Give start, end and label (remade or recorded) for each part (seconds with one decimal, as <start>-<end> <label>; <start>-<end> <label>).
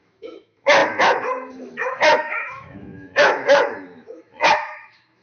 0.0-5.2 remade